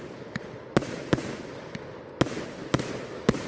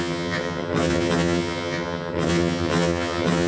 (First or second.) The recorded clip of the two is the first